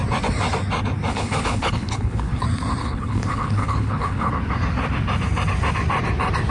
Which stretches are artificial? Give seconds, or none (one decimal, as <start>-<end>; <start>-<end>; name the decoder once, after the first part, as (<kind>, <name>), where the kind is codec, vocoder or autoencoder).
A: 1.1-2.4 (codec, HILCodec); 2.8-4.3